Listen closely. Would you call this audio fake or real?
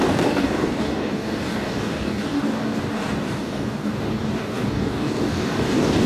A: fake